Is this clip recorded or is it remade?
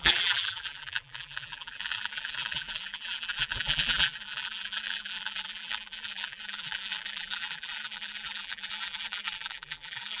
remade